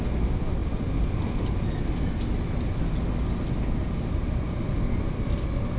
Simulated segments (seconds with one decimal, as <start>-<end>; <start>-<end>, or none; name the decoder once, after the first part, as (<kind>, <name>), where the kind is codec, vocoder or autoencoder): none